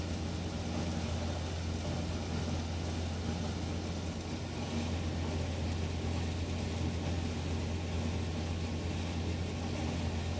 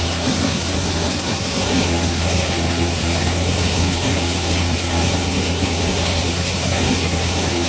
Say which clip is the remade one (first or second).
second